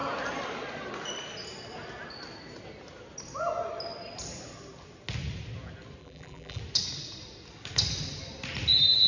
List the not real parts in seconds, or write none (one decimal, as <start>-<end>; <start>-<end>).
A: 6.0-6.6